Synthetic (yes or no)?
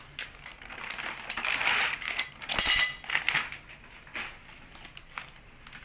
no